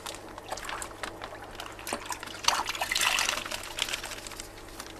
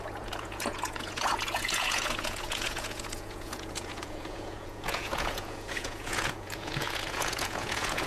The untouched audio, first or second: first